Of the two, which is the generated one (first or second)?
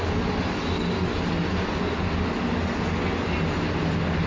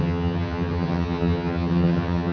second